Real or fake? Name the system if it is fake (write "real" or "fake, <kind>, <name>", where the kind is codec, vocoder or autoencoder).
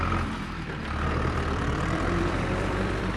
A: fake, vocoder, BigVGAN v2